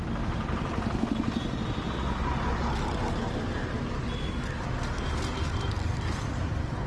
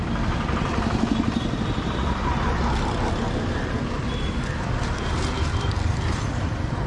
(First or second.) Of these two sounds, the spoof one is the second